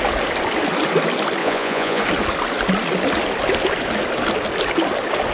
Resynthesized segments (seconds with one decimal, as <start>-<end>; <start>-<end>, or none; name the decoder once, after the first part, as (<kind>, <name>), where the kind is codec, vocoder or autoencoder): 1.4-2.0 (vocoder, Vocos)